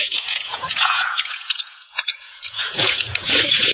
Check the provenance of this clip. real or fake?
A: fake